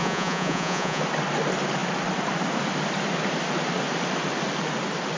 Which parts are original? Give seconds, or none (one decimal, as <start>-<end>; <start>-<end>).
1.0-5.2